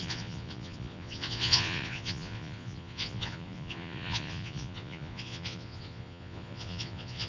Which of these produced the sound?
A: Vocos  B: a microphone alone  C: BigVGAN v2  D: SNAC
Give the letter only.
A